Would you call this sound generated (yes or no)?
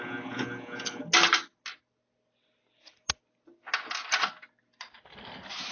no